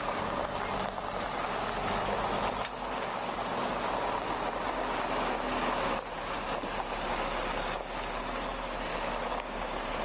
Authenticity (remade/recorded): recorded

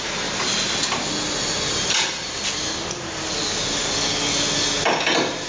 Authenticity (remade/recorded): recorded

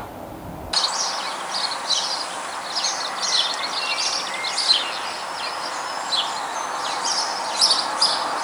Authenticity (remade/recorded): recorded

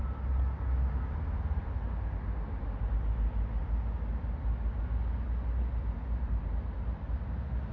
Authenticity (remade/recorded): recorded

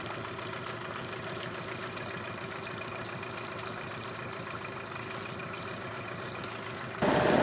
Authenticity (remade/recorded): recorded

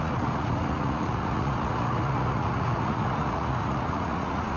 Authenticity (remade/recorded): remade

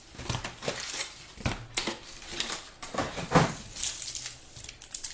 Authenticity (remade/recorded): recorded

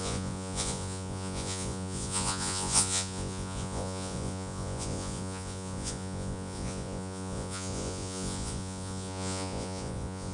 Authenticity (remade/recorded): remade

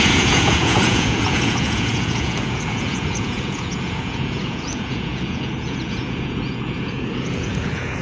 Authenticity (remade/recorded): remade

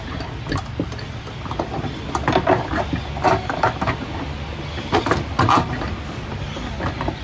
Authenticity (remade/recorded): recorded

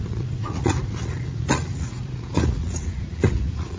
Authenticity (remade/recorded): remade